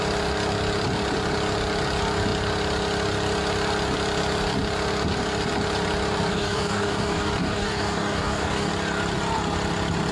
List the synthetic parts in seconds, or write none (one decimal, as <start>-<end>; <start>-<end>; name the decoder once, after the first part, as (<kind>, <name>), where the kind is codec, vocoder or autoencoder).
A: 6.3-8.7 (codec, DAC)